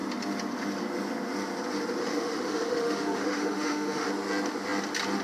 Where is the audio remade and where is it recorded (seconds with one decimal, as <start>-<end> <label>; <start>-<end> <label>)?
0.0-2.0 recorded; 2.0-4.1 remade; 4.1-5.2 recorded